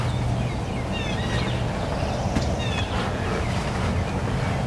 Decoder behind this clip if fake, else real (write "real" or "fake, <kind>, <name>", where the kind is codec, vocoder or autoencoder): real